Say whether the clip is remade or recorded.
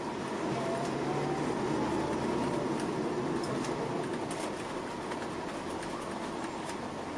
recorded